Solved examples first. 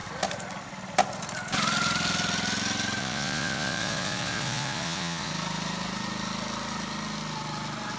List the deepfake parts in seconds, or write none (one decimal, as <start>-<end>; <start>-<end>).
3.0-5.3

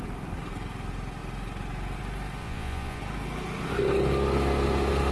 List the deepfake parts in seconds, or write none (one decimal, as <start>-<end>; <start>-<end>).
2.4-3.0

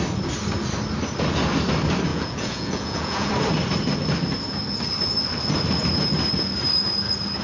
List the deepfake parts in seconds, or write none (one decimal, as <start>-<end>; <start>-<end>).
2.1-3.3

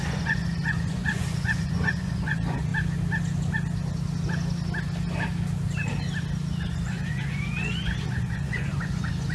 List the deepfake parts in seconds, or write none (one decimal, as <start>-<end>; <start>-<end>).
0.0-2.7; 6.6-9.3

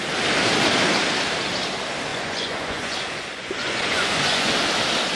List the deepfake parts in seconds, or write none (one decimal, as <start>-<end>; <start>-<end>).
2.1-4.5

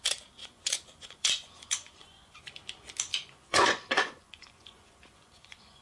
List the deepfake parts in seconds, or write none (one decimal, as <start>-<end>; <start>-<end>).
0.4-2.5; 3.1-5.8